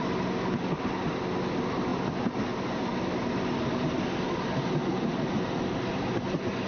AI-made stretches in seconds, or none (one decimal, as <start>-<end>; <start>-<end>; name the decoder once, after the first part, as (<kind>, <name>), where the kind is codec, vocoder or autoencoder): none